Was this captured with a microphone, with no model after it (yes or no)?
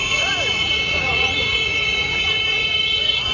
no